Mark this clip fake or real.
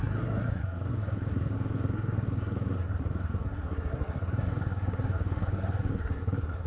fake